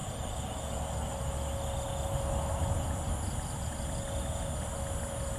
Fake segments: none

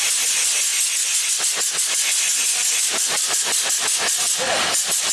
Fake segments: 2.8-4.0 (vocoder, BigVGAN v2)

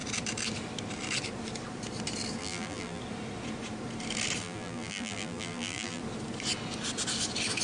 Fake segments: 2.4-3.0 (vocoder, BigVGAN v2); 4.4-6.0

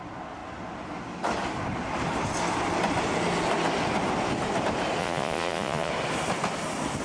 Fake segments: 5.0-5.9 (vocoder, Vocos)

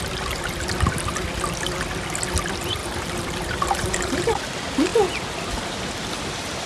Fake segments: 2.8-4.1 (vocoder, BigVGAN v2)